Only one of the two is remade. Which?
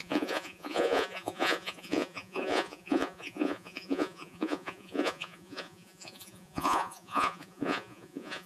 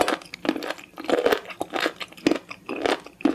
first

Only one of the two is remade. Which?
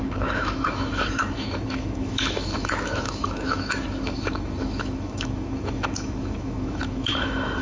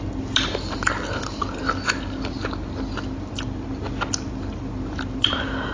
first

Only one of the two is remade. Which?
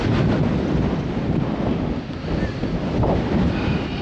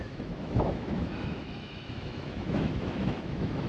second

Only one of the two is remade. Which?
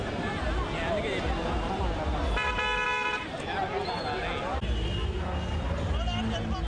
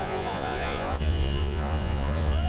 second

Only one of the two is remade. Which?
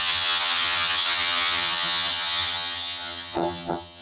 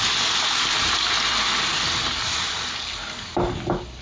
first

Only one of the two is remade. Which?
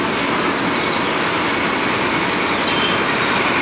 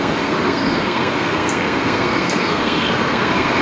second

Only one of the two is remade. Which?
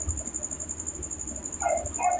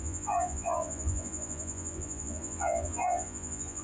second